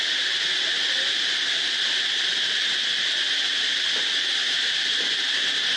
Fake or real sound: real